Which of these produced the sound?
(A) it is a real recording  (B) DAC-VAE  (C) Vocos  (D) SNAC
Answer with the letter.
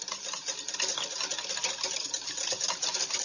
A